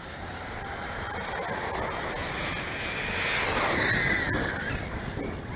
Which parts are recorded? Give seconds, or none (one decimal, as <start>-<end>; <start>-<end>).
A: 0.0-5.6